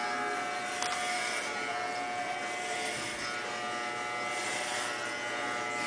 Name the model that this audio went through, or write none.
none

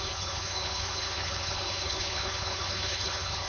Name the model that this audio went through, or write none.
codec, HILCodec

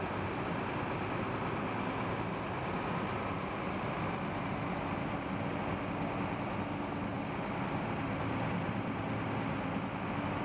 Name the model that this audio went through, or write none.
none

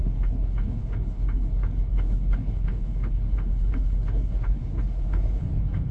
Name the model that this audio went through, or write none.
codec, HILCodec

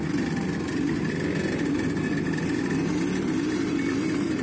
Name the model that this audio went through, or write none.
none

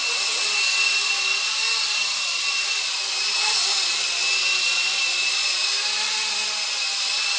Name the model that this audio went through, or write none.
none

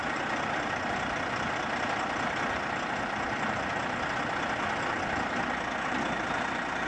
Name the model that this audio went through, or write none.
none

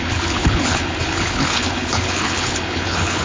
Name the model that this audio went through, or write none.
codec, HILCodec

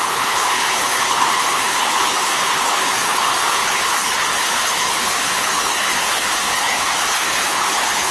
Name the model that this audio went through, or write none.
codec, HILCodec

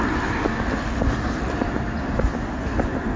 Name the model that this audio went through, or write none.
none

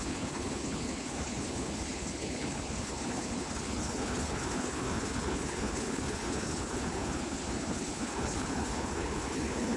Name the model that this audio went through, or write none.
codec, HILCodec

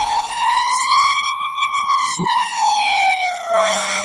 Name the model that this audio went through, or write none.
codec, HILCodec